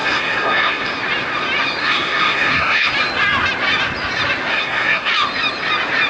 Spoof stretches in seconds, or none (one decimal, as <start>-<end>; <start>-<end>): 0.0-0.9; 1.8-2.9; 4.5-5.1